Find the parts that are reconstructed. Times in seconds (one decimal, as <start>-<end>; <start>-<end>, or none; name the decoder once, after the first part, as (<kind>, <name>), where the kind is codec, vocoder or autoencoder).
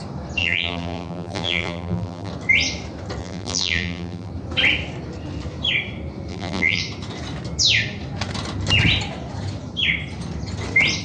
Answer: 0.4-2.3 (vocoder, BigVGAN v2); 3.2-4.3; 6.3-6.8